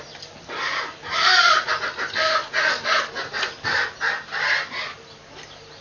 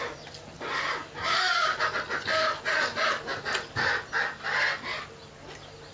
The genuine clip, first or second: second